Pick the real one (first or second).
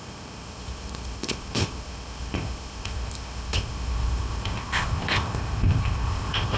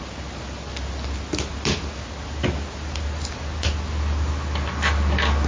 second